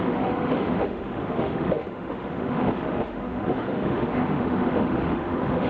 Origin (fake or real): fake